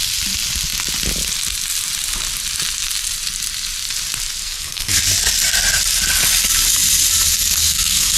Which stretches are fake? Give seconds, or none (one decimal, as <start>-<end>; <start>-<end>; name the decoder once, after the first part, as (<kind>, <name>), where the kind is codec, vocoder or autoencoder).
4.4-5.0 (codec, SNAC); 7.6-8.2